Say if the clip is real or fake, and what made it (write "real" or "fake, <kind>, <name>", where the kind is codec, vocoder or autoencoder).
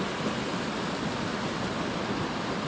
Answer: real